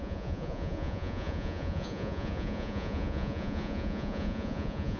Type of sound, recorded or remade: remade